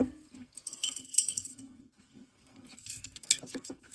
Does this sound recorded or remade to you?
remade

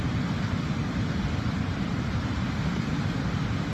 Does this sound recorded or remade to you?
recorded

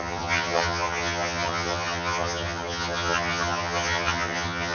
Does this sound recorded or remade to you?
remade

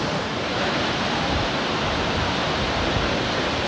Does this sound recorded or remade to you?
remade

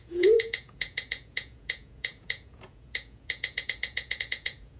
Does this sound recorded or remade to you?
remade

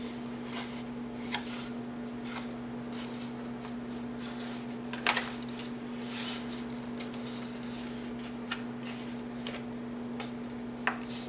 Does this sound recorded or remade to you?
recorded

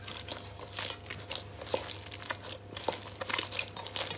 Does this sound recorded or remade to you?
recorded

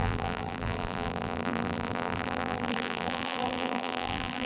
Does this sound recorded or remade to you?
remade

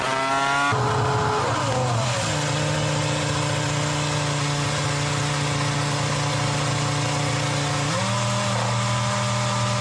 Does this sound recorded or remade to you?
recorded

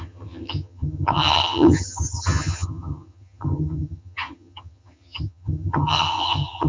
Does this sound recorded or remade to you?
remade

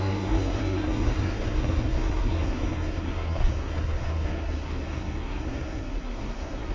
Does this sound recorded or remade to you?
remade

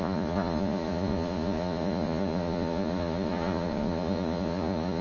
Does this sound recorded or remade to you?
remade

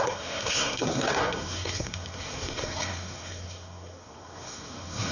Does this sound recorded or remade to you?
remade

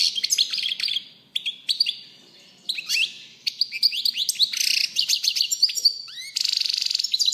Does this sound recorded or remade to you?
remade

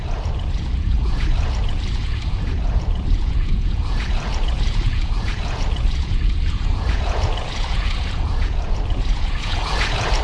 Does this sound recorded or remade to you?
remade